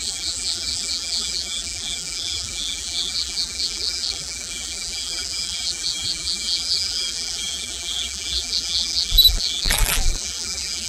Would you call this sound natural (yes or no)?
no